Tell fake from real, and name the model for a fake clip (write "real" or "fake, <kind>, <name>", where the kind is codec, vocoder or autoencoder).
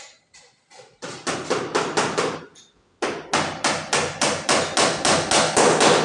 real